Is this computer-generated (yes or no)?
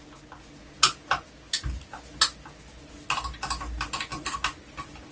no